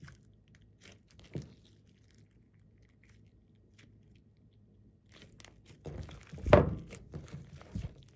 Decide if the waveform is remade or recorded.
recorded